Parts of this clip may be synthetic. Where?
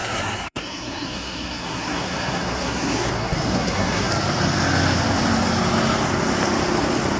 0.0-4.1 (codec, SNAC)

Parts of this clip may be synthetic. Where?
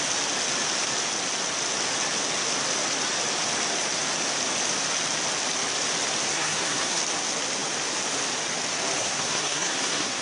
6.3-7.0 (codec, SNAC); 9.0-10.2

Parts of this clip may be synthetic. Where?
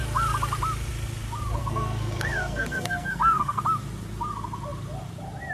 1.6-3.6 (codec, SNAC)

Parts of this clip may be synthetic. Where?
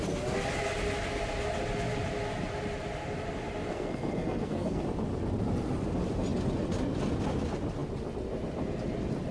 3.7-4.8 (codec, SNAC)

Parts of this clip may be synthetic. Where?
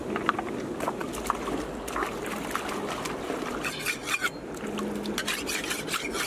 none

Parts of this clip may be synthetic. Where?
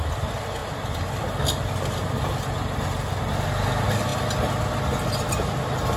none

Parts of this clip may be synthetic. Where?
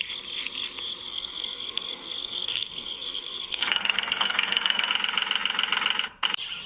1.1-4.9 (codec, SNAC)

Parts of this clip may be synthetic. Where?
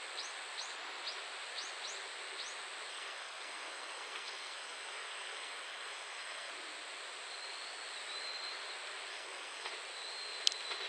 2.9-6.5 (codec, SNAC); 9.1-9.7